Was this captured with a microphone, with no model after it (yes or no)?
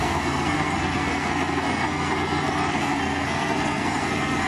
no